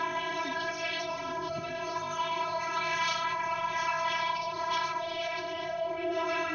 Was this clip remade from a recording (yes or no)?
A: yes